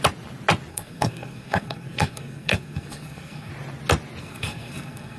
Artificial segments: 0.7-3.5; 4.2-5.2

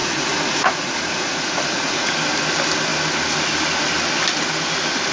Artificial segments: 0.0-2.1

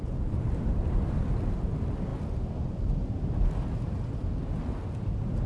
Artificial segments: none

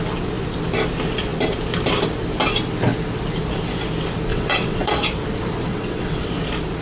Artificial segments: 4.3-4.9; 5.7-6.3

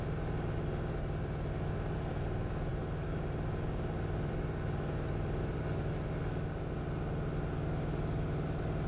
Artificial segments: none

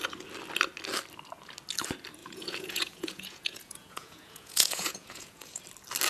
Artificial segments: 2.2-5.6